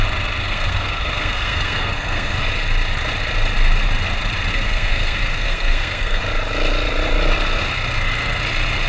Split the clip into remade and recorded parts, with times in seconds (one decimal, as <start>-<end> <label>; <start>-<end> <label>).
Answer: 0.0-0.4 recorded; 0.4-2.4 remade; 2.4-4.5 recorded; 4.5-6.2 remade; 6.2-8.9 recorded